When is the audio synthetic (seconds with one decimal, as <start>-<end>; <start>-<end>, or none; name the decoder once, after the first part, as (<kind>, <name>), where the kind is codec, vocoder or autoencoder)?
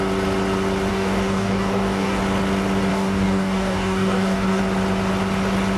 0.9-2.2 (codec, DAC); 2.9-4.6